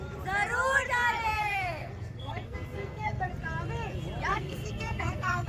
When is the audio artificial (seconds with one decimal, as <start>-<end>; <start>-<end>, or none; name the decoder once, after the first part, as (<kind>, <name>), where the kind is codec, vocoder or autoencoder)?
1.4-3.3 (codec, SNAC); 4.3-5.5